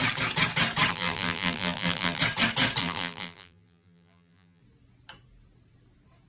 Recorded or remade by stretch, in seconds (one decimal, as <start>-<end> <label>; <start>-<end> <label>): 0.0-0.9 recorded; 0.9-2.2 remade; 2.2-2.8 recorded; 2.8-4.6 remade; 4.6-6.3 recorded